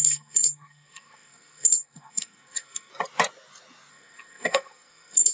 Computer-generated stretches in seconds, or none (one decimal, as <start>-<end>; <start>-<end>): 0.0-2.9; 3.9-5.3